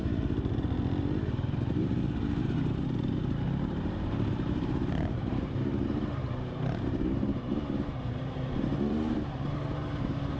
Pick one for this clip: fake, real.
fake